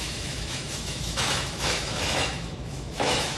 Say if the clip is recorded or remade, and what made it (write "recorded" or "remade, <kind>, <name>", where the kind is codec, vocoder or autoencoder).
remade, autoencoder, DAC-VAE